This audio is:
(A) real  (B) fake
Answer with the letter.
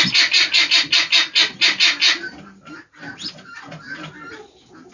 A